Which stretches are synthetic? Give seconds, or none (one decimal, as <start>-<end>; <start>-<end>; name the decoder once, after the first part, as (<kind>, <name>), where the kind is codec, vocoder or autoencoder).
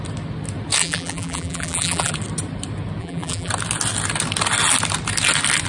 0.8-2.1 (vocoder, BigVGAN v2); 3.0-3.5